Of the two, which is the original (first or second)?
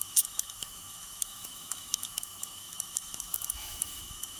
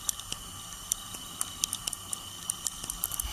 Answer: second